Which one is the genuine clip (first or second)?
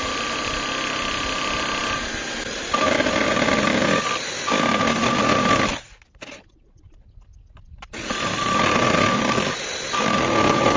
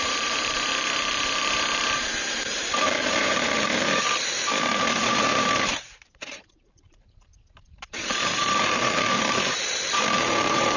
first